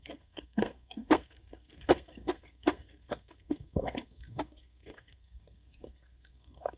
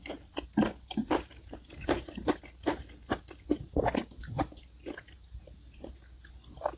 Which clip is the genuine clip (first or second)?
second